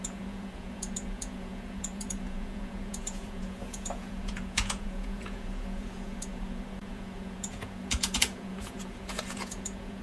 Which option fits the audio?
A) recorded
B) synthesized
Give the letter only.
B